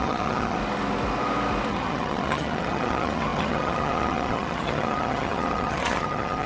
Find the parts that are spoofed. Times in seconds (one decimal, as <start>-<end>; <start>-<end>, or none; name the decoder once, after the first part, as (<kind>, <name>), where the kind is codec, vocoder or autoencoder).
0.0-0.6 (vocoder, HiFi-GAN); 1.7-6.5